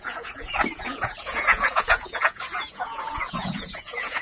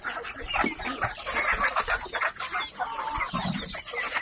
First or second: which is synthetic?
first